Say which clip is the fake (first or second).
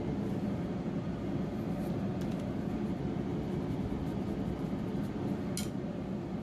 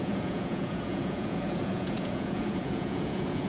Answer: second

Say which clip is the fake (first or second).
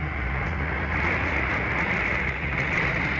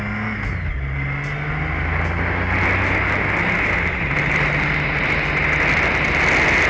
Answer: first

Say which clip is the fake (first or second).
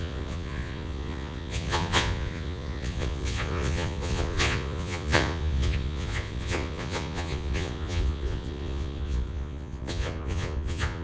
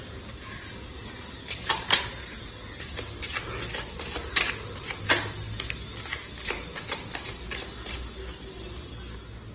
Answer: first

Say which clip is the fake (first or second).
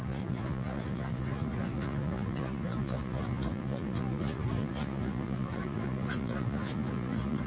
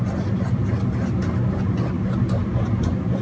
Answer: first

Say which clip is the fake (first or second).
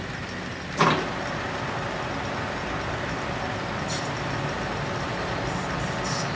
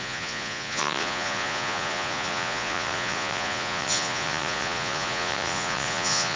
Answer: second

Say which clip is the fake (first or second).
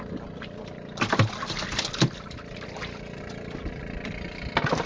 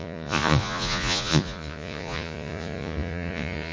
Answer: second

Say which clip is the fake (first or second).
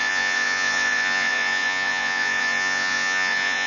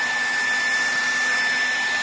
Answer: first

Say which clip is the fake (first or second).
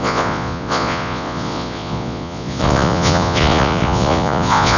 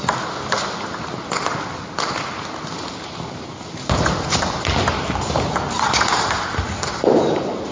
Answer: first